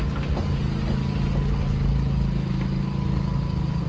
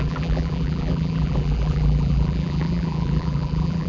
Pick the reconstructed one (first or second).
second